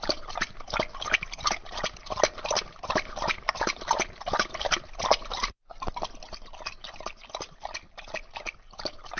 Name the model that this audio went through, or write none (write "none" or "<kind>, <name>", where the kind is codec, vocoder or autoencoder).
none